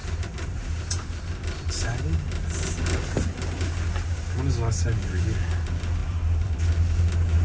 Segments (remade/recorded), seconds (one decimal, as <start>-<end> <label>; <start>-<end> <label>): 0.0-1.9 remade; 1.9-6.0 recorded; 6.0-6.6 remade; 6.6-7.4 recorded